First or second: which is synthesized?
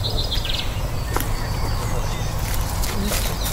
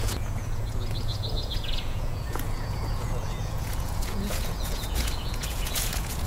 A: second